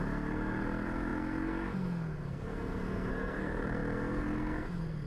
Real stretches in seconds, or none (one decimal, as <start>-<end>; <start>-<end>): none